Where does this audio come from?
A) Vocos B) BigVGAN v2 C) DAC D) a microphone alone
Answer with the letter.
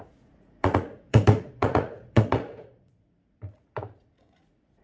A